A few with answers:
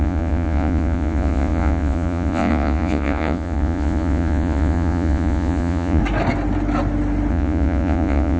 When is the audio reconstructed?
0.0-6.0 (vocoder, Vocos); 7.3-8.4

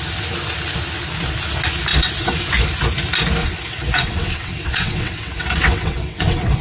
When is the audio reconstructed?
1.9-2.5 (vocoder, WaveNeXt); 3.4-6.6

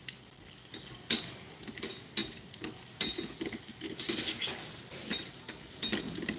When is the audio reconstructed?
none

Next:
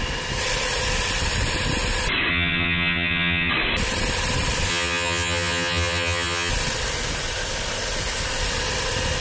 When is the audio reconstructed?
2.3-3.5 (vocoder, HiFi-GAN); 4.7-6.5

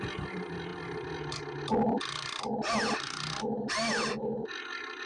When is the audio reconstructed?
none